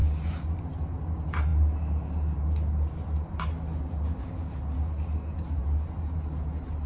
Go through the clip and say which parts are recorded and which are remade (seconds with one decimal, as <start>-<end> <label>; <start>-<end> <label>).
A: 0.0-6.9 recorded